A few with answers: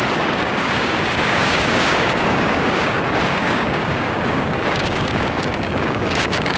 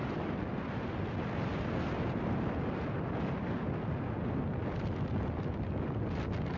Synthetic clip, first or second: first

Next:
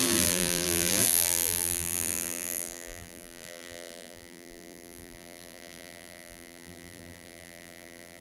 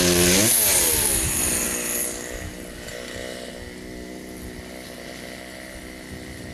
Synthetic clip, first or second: first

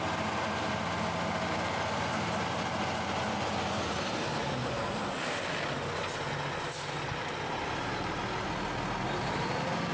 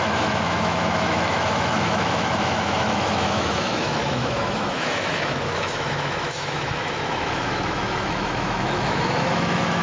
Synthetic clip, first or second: second